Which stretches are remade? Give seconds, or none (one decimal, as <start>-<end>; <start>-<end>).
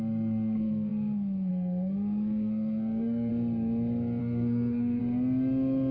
0.0-3.3; 4.2-5.0